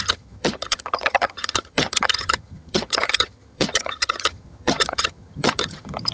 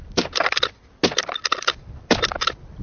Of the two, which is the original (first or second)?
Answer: second